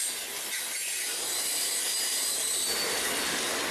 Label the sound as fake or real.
real